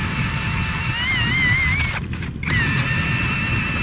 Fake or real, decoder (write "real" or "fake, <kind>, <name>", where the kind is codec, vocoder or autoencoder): real